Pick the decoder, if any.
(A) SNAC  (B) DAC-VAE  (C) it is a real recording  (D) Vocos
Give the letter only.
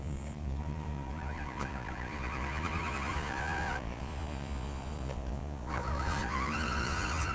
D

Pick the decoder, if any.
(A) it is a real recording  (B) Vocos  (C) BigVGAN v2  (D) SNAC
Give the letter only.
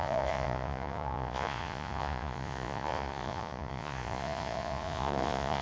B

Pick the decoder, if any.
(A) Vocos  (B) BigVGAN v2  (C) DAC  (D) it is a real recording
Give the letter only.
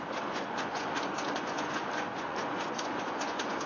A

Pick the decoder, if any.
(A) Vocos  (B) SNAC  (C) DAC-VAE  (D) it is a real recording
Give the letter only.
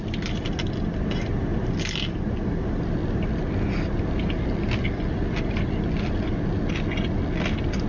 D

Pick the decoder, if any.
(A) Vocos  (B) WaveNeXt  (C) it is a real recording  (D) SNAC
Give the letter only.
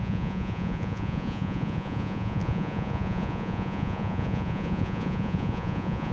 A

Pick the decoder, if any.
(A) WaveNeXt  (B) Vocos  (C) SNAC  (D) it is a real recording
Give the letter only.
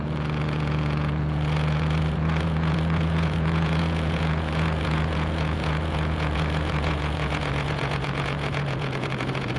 B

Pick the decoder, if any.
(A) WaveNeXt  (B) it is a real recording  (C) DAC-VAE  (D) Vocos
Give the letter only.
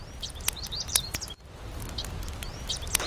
B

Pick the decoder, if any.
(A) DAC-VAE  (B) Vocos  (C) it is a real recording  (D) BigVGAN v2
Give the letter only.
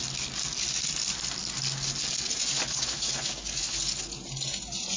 C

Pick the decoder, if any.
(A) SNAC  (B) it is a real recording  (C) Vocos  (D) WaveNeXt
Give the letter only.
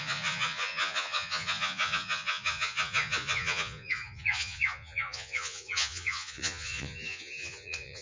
C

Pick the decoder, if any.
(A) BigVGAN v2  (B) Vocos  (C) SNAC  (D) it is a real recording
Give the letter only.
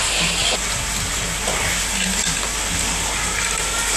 D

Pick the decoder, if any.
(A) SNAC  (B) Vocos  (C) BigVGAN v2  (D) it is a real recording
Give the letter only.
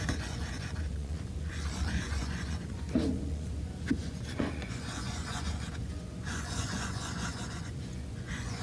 B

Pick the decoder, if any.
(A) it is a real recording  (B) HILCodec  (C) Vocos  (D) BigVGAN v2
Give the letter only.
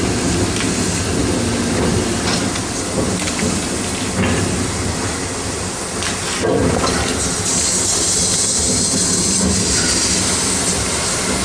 A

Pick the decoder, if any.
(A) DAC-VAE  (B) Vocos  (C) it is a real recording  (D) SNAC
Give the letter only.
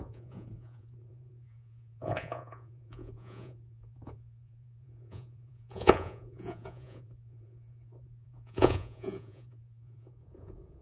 B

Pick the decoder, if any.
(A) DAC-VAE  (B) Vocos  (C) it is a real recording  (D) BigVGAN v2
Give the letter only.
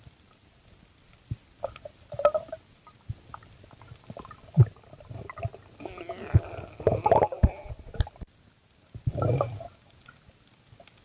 C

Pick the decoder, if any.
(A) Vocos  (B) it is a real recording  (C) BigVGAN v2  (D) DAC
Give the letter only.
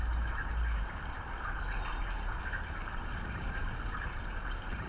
B